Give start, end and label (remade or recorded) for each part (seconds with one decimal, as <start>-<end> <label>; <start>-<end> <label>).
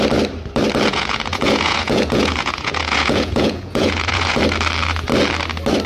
0.0-0.9 recorded; 0.9-4.4 remade; 4.4-5.9 recorded